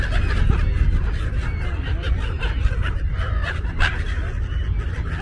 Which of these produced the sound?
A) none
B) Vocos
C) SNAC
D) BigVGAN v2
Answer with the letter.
A